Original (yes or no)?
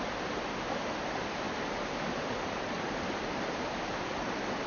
yes